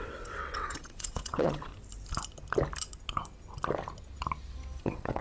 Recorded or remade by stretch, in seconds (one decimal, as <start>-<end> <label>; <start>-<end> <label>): 0.0-1.7 remade; 1.7-4.8 recorded; 4.8-5.2 remade